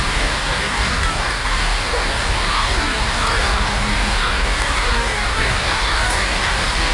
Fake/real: fake